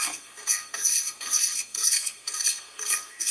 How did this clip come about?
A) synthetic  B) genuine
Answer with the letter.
A